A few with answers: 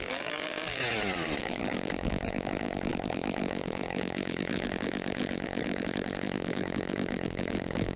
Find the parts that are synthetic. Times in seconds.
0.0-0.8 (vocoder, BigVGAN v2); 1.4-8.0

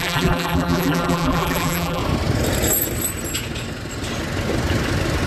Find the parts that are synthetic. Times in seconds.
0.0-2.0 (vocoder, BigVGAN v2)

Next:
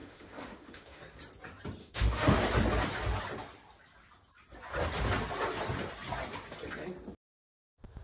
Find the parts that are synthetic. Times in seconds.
0.0-1.0 (autoencoder, DAC-VAE); 1.8-2.4

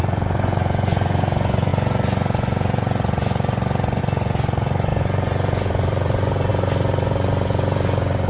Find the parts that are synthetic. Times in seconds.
0.0-8.3 (vocoder, Vocos)

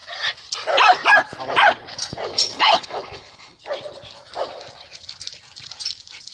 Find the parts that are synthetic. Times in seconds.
2.3-3.6 (codec, HILCodec)

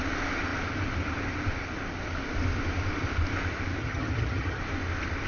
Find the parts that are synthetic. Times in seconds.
3.8-4.6 (vocoder, HiFi-GAN)

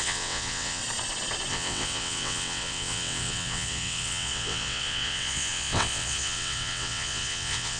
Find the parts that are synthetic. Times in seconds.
0.0-0.8 (vocoder, WaveNeXt); 1.5-7.8